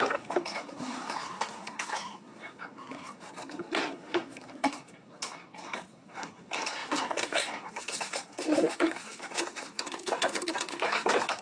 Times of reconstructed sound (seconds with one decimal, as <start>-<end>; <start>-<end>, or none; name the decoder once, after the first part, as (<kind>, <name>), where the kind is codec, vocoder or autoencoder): 0.0-11.4 (codec, SNAC)